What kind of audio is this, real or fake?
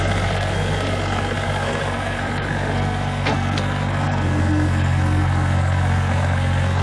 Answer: fake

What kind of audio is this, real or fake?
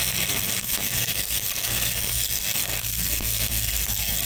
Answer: fake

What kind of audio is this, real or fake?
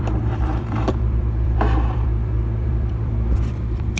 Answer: fake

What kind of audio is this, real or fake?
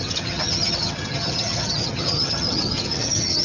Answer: fake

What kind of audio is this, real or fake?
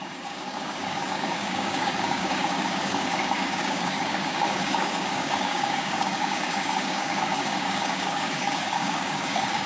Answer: fake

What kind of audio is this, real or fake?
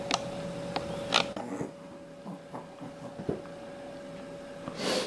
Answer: real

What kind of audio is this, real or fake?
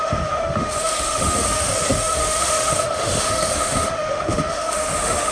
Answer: fake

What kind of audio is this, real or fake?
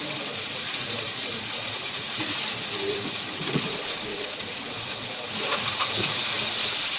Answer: fake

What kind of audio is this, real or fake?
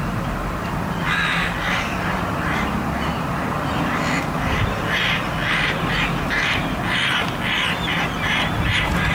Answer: real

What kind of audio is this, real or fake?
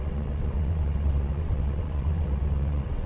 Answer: fake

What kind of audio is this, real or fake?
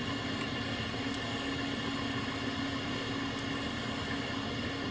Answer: real